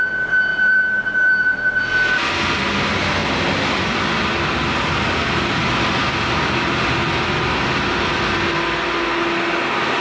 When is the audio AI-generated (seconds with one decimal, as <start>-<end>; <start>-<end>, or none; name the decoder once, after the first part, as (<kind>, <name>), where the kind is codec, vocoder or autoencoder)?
0.5-1.7 (vocoder, BigVGAN v2)